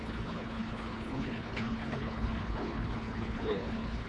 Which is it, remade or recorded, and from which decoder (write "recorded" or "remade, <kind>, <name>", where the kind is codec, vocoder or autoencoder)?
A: remade, codec, HILCodec